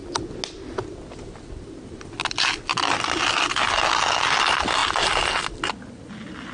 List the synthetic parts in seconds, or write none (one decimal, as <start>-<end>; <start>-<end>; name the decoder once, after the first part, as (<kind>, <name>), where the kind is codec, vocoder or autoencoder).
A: none